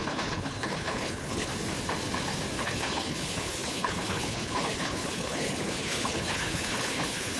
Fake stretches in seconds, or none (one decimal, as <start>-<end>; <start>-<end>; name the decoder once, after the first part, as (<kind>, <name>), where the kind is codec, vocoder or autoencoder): 0.0-1.5 (codec, HILCodec); 2.6-7.4